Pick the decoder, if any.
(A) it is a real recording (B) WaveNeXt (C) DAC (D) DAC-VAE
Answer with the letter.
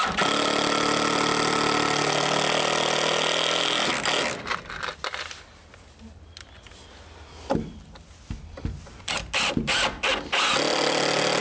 A